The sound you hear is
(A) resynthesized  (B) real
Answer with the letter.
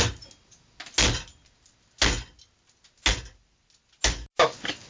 B